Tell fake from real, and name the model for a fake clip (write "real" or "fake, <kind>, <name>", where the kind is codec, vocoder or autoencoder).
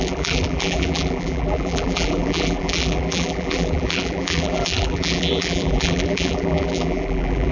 fake, vocoder, BigVGAN v2